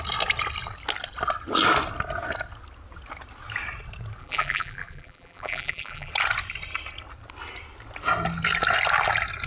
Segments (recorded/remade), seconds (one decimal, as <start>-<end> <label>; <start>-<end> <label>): 0.0-4.2 recorded; 4.2-6.1 remade; 6.1-9.5 recorded